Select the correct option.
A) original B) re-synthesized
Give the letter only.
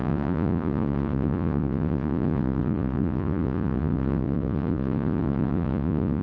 B